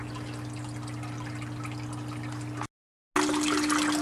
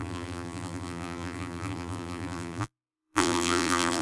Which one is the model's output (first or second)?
second